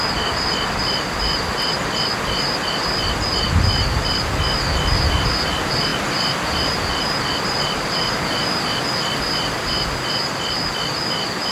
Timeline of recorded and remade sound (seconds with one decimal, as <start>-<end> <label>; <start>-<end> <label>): 0.0-11.5 recorded

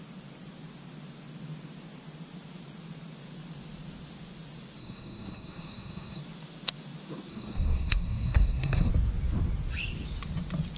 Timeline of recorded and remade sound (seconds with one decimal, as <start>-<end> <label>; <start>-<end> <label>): 0.0-4.8 recorded; 4.8-6.2 remade; 6.2-7.3 recorded; 7.3-8.9 remade; 8.9-10.8 recorded

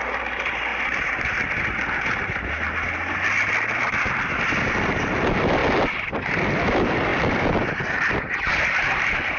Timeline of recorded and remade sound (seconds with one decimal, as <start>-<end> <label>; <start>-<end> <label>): 0.0-9.4 recorded

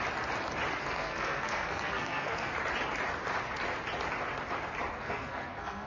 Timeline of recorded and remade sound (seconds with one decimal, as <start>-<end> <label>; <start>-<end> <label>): 0.0-0.8 recorded; 0.8-2.5 remade; 2.5-4.9 recorded; 4.9-5.9 remade

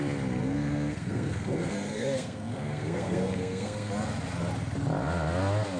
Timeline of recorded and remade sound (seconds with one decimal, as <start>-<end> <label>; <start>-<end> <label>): 0.0-0.4 recorded; 0.4-3.9 remade; 3.9-5.8 recorded

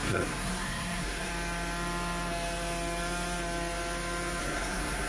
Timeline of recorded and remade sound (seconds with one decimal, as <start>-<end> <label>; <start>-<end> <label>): 0.0-1.3 remade; 1.3-4.4 recorded; 4.4-5.1 remade

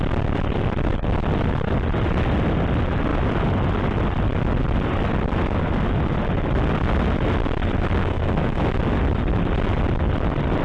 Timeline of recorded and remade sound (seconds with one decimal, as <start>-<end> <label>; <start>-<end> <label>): 0.0-8.0 recorded; 8.0-8.6 remade; 8.6-10.6 recorded

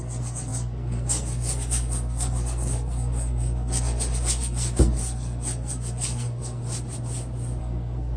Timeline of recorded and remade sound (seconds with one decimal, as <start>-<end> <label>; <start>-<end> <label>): 0.0-6.6 remade; 6.6-7.6 recorded; 7.6-8.2 remade